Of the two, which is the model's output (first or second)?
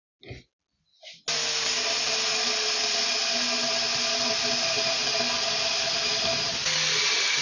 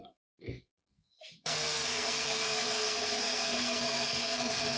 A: second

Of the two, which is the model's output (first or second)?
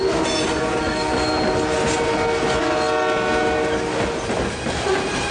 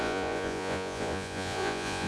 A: second